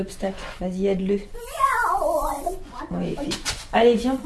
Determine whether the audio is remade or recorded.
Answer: remade